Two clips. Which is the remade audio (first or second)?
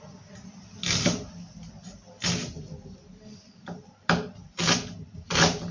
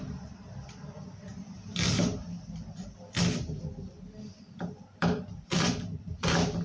second